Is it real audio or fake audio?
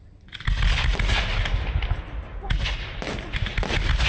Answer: real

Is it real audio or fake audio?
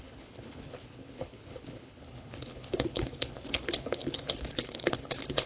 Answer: fake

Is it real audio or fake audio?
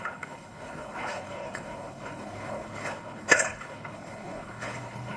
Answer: fake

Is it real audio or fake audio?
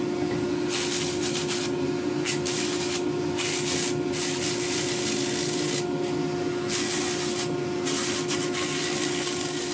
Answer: real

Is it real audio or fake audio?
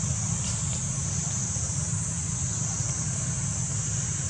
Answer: real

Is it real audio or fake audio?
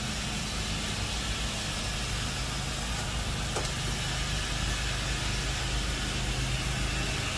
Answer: real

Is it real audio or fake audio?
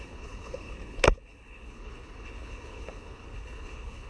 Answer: fake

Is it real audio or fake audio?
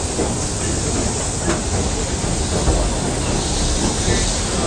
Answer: real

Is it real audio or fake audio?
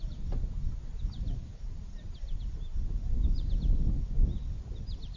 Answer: real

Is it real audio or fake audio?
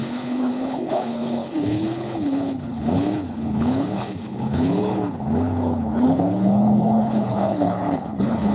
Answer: fake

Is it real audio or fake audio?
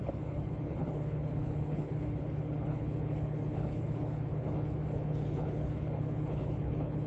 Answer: fake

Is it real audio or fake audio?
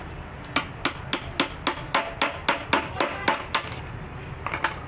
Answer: real